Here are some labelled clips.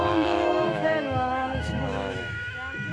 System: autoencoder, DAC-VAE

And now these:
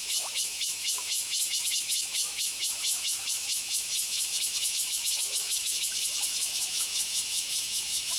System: autoencoder, DAC-VAE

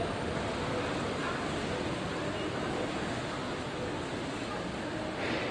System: none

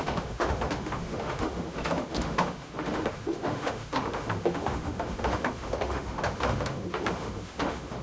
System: autoencoder, DAC-VAE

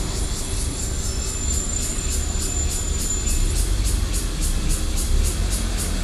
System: none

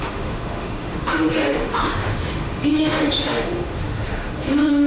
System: autoencoder, DAC-VAE